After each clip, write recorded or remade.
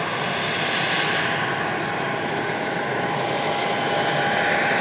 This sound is recorded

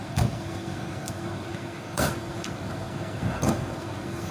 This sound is remade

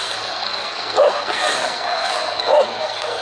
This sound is remade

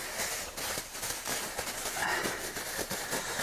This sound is recorded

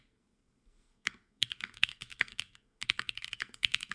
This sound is remade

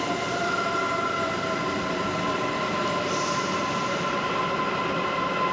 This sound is recorded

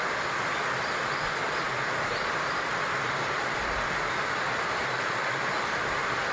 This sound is recorded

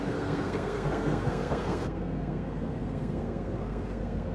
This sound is remade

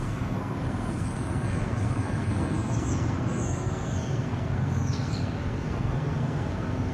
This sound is remade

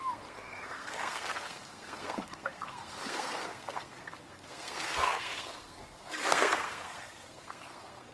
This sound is remade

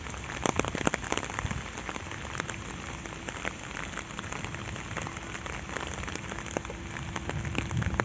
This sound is recorded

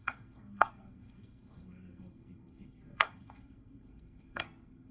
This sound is remade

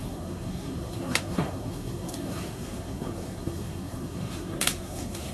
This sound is remade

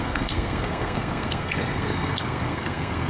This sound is remade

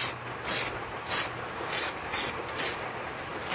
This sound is recorded